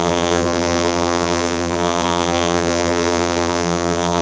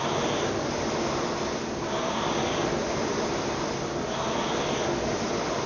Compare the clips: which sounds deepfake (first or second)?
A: first